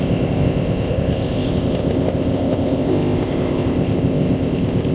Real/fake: fake